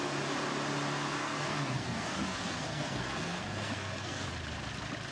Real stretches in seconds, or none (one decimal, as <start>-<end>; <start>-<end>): 0.0-1.2; 4.3-5.1